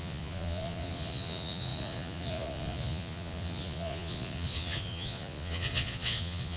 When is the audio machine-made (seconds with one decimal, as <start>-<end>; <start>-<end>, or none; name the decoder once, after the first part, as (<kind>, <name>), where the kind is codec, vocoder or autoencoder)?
0.0-6.6 (vocoder, Vocos)